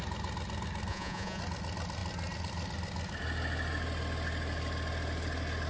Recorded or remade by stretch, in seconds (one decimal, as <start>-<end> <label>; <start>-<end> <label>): 0.0-0.9 recorded; 0.9-1.4 remade; 1.4-5.7 recorded

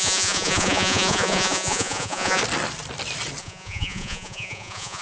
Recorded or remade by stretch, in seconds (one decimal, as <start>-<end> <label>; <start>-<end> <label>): 0.0-2.4 remade; 2.4-3.4 recorded; 3.4-5.0 remade

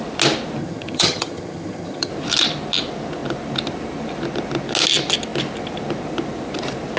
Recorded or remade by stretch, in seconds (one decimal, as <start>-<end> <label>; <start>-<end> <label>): 0.0-0.6 recorded; 0.6-2.1 remade; 2.1-7.0 recorded